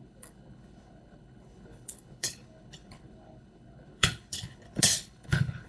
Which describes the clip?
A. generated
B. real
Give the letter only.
A